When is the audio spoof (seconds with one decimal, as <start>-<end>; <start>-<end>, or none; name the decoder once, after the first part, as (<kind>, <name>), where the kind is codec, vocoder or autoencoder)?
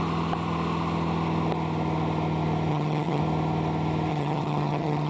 2.7-3.2 (vocoder, HiFi-GAN); 4.1-5.1